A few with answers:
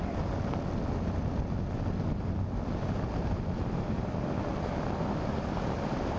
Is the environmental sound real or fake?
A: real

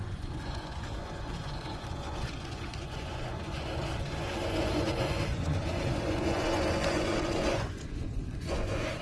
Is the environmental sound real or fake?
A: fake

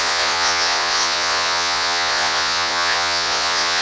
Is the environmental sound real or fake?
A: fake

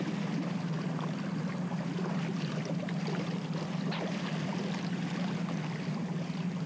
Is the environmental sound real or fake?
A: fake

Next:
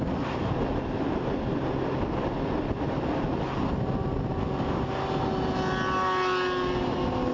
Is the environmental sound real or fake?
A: real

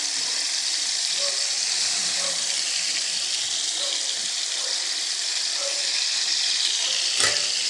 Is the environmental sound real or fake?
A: fake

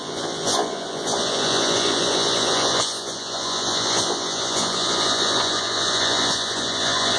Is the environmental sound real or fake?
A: fake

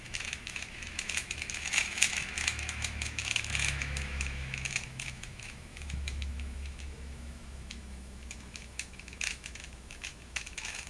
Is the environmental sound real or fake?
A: fake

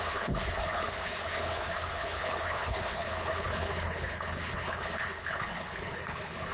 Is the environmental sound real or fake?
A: fake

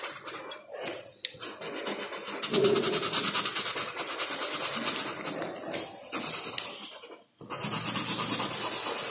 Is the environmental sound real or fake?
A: real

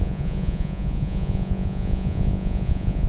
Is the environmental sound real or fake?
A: fake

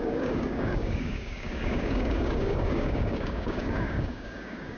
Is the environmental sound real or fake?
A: fake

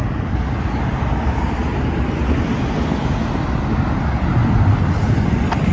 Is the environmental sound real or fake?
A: real